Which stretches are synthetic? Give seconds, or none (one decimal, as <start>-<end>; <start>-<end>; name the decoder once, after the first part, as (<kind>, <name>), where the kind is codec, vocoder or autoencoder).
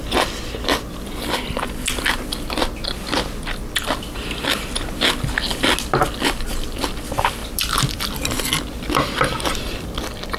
none